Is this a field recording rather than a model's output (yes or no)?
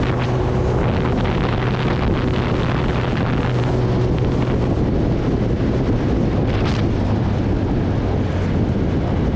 yes